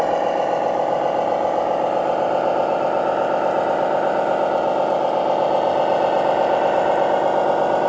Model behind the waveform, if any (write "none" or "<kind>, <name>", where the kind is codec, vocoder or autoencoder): none